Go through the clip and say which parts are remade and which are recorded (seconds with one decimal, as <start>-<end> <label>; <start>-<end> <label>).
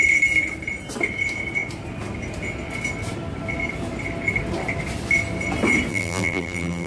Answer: 0.0-5.9 recorded; 5.9-6.9 remade